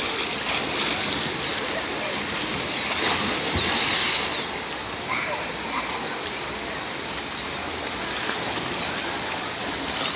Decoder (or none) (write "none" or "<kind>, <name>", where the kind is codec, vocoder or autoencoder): none